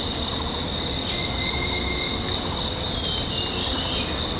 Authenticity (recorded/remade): recorded